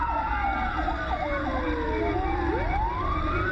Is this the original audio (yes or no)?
yes